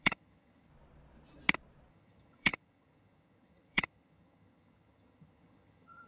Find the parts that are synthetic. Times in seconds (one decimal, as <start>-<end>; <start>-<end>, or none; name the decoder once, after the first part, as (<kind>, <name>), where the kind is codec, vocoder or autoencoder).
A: 0.0-0.7 (vocoder, HiFi-GAN); 1.9-6.1